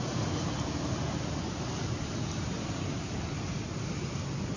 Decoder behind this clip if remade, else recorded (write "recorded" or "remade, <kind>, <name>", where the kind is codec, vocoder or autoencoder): recorded